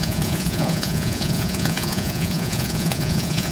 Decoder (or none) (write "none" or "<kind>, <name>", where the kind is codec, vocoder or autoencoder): vocoder, Vocos